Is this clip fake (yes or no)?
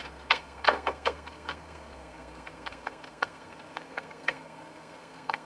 yes